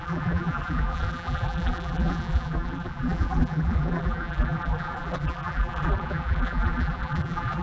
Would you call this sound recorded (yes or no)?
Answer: no